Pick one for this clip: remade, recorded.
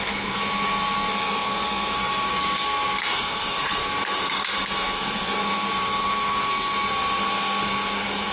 remade